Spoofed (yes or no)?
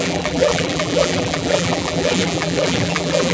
yes